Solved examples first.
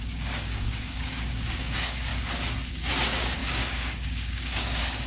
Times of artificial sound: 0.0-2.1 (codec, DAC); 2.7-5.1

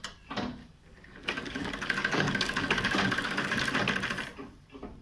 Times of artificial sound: 0.6-3.6 (codec, DAC)

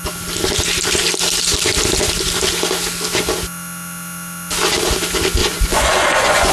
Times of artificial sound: 5.4-6.5 (vocoder, Vocos)

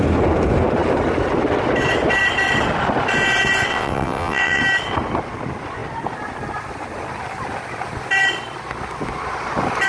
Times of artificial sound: 3.7-4.6 (vocoder, WaveNeXt)

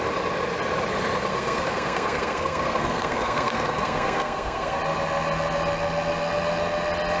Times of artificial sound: 1.3-4.8 (codec, SNAC)

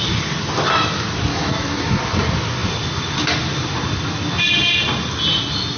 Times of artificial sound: 1.3-2.0 (autoencoder, DAC-VAE)

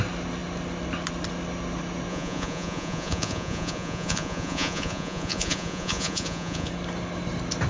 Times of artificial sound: 2.1-6.7 (vocoder, Vocos)

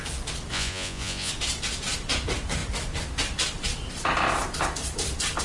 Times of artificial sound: 0.5-1.3 (vocoder, Vocos)